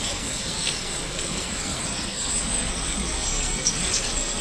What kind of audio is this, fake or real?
fake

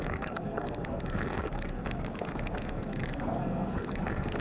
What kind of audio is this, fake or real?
fake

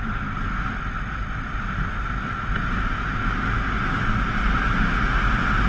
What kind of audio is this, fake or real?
real